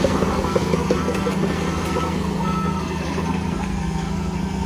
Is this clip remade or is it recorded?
remade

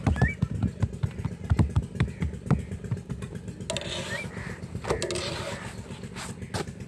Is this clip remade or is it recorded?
recorded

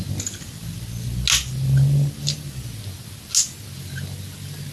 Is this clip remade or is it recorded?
recorded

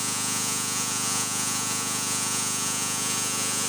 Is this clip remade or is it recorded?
remade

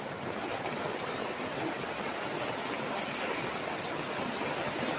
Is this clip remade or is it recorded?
recorded